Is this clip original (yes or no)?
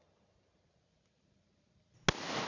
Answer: yes